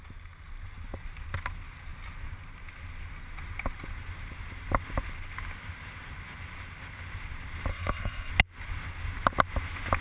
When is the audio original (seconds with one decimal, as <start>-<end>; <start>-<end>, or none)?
0.0-7.7; 8.3-10.0